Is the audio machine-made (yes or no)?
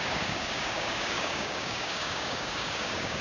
yes